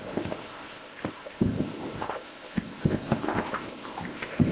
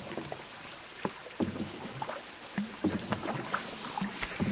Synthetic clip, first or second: first